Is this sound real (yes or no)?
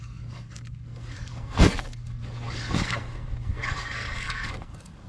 no